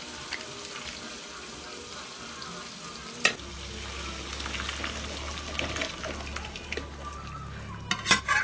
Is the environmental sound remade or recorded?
recorded